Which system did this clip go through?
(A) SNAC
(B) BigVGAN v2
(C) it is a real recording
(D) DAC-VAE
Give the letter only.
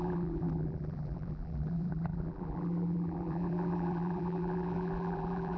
B